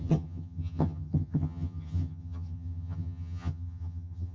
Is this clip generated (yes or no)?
yes